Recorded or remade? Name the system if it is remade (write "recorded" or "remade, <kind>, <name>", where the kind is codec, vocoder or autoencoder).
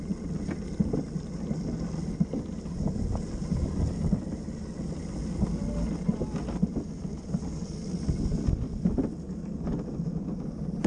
recorded